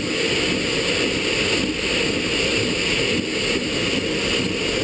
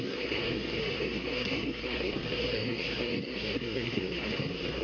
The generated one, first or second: second